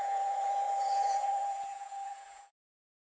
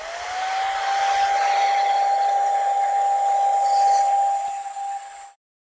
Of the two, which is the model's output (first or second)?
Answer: first